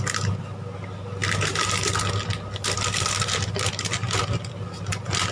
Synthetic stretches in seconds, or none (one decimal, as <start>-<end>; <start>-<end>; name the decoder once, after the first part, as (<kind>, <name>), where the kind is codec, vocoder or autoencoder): none